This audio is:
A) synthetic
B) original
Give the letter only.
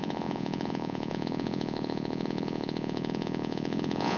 A